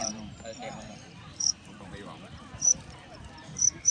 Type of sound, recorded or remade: remade